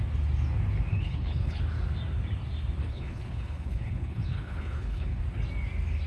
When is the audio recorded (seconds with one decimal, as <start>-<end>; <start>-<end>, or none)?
0.0-0.9; 1.6-2.8; 5.2-6.1